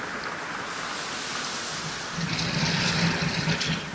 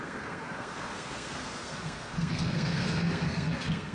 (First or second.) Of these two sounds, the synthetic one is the second